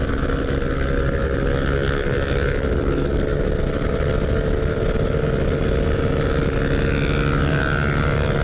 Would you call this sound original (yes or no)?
yes